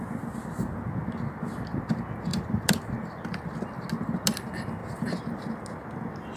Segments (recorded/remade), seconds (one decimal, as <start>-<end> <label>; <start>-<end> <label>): 0.0-2.3 recorded; 2.3-3.4 remade; 3.4-4.8 recorded; 4.8-5.4 remade; 5.4-6.4 recorded